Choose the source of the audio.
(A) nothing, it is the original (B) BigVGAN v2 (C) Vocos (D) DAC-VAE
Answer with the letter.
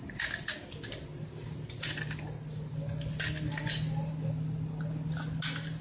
A